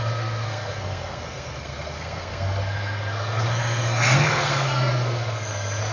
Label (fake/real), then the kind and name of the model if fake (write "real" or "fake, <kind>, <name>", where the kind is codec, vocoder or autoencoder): fake, codec, SNAC